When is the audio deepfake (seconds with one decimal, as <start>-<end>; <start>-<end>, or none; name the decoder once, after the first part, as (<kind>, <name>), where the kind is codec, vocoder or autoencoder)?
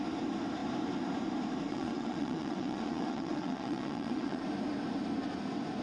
1.7-4.4 (vocoder, WaveNeXt)